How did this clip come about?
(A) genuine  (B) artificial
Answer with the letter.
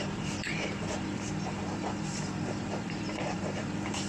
B